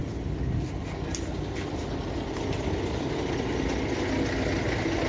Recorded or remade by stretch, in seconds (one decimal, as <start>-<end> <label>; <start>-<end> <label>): 0.0-5.1 recorded